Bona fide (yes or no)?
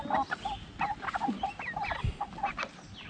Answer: yes